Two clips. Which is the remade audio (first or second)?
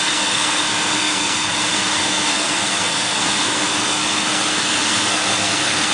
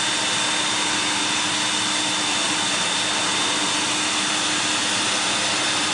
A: first